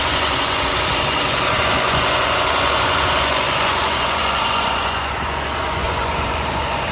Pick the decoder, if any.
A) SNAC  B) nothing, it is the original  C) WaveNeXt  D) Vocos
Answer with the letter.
D